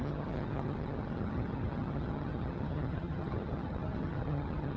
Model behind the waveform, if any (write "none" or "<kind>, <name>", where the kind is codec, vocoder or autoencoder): vocoder, HiFi-GAN